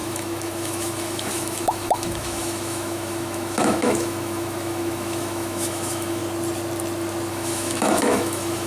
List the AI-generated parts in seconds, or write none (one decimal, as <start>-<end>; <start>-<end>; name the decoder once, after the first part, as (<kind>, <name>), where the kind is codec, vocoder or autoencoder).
0.0-6.2 (autoencoder, DAC-VAE); 7.3-8.7